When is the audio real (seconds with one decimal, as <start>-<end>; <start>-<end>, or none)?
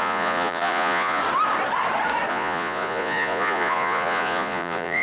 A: 1.2-2.3